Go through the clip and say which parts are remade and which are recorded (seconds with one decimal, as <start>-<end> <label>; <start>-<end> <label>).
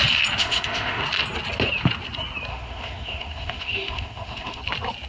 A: 0.0-0.4 recorded; 0.4-1.0 remade; 1.0-2.5 recorded; 2.5-4.6 remade; 4.6-5.1 recorded